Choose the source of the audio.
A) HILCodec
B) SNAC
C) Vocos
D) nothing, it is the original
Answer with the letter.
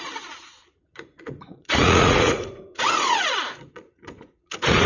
C